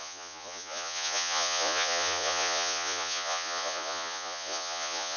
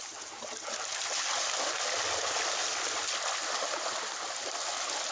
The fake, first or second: first